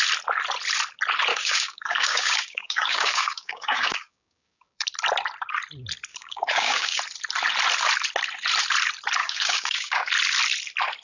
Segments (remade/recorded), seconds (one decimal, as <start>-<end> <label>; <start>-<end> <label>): 0.0-1.3 recorded; 1.3-4.9 remade; 4.9-6.1 recorded; 6.1-7.0 remade; 7.0-9.2 recorded; 9.2-10.1 remade; 10.1-11.0 recorded